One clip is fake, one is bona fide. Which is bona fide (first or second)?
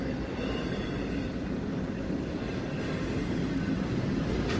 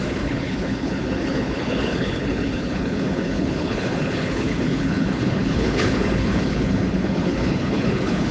first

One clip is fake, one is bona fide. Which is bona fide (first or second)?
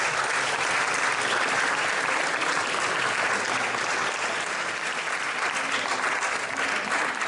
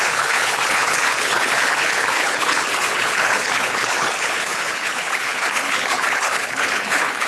first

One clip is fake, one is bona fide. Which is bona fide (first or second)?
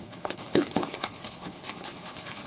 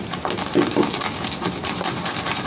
second